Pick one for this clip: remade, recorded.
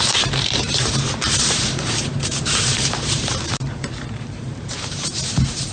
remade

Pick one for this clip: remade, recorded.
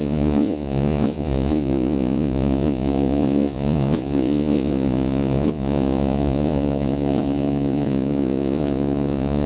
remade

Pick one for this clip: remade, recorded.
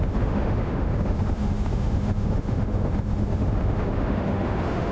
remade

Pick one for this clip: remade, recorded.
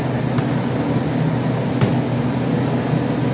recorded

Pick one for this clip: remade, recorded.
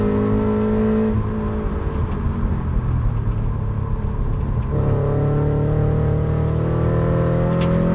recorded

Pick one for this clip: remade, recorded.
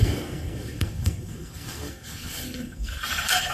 remade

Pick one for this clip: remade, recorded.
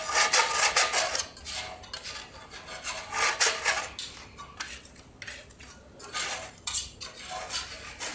recorded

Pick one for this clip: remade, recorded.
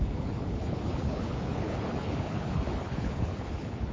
remade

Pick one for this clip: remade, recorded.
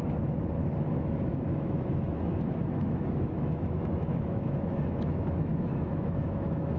remade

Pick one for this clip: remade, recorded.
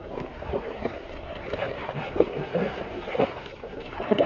remade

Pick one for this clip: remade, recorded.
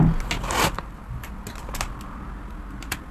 recorded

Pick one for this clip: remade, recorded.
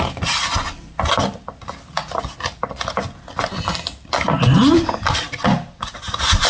recorded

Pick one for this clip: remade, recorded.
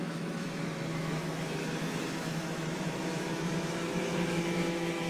remade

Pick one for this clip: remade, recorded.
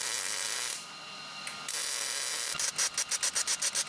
recorded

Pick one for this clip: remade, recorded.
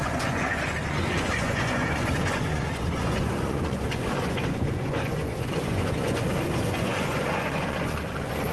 remade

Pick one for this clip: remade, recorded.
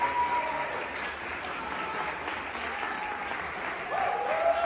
recorded